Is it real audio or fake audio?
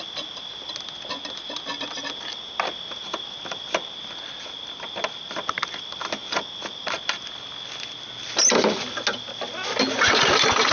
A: real